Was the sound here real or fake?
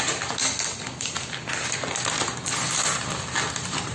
real